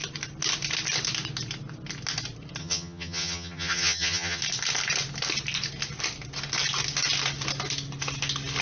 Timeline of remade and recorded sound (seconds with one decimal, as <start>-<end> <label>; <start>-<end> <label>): 0.0-2.6 recorded; 2.6-4.4 remade; 4.4-8.6 recorded